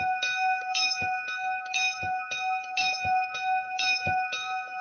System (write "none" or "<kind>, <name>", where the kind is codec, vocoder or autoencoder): codec, DAC